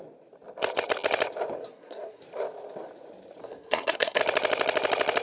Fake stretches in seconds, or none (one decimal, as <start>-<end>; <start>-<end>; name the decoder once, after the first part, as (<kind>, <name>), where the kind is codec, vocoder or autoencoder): 1.6-2.2 (codec, SNAC); 3.4-4.2